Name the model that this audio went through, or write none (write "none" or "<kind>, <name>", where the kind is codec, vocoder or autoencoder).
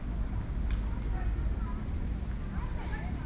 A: none